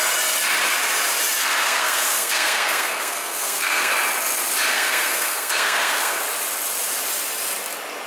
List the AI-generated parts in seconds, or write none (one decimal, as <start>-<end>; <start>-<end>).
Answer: 1.4-3.9; 4.7-6.2